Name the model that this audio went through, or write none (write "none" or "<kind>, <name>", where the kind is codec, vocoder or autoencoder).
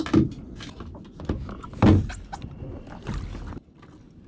none